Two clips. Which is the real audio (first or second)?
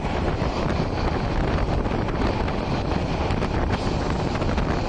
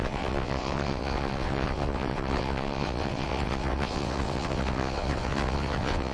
first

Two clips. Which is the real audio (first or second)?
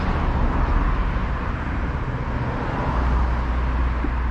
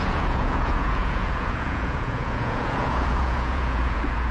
first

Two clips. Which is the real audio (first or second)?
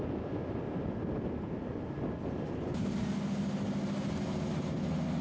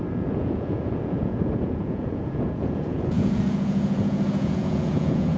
first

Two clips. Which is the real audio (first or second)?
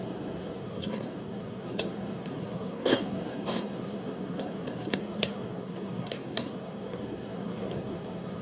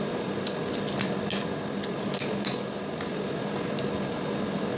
second